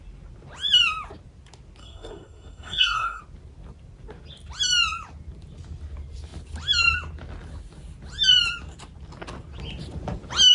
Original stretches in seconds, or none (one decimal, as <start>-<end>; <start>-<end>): 0.0-1.8; 3.2-10.5